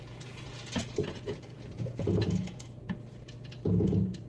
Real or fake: fake